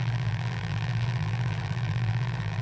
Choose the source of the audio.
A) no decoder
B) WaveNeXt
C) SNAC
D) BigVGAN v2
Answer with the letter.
D